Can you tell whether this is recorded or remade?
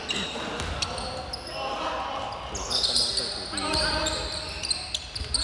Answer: recorded